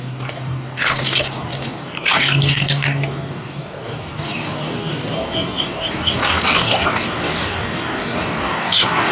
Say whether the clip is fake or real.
fake